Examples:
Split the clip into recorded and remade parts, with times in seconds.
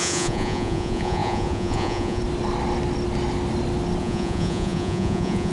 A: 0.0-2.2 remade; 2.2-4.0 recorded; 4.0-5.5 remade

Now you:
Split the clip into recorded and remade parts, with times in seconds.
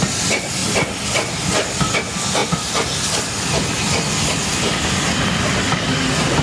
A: 0.0-6.4 recorded